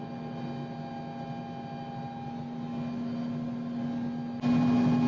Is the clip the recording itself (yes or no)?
yes